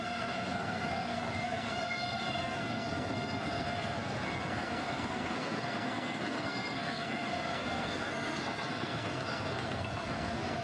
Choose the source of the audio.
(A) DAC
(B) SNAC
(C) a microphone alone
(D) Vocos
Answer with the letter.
B